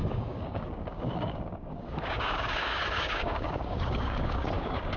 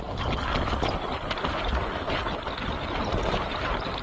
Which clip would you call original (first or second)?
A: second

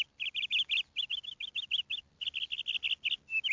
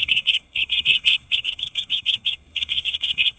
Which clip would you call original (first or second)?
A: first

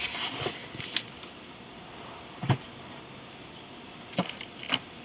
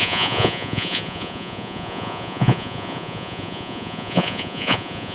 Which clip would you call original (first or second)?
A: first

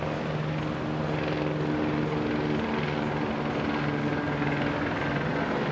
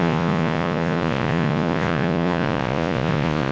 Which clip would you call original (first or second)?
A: first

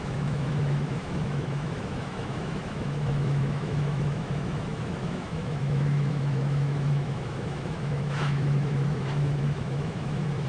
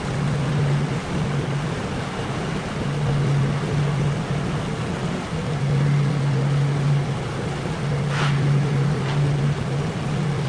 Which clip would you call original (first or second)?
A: second